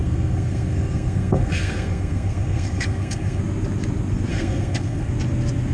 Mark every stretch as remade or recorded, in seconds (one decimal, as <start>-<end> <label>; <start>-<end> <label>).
0.0-3.4 remade; 3.4-4.3 recorded; 4.3-5.1 remade; 5.1-5.7 recorded